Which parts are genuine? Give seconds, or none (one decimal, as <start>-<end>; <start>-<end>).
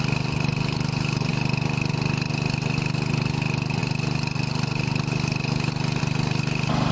0.0-6.9